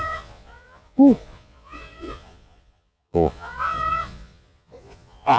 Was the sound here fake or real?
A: fake